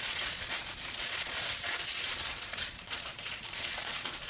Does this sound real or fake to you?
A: fake